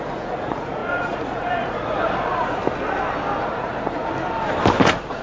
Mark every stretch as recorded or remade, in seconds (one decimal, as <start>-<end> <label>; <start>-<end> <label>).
0.0-2.6 remade; 2.6-3.4 recorded; 3.4-4.0 remade; 4.0-5.2 recorded